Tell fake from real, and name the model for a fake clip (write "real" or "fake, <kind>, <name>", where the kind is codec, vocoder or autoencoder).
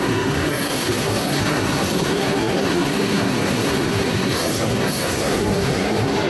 fake, codec, SNAC